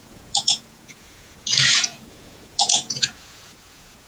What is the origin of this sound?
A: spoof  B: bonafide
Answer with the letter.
A